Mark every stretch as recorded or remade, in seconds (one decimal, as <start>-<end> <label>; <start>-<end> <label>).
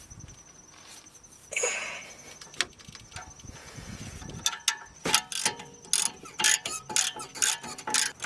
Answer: 0.0-1.4 recorded; 1.4-2.0 remade; 2.0-3.6 recorded; 3.6-4.4 remade; 4.4-8.3 recorded